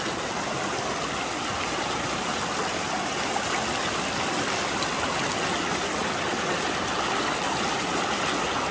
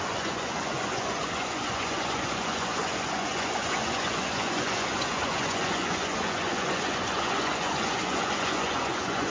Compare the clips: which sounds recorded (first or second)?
first